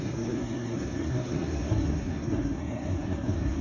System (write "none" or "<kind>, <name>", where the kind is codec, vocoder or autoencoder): codec, SNAC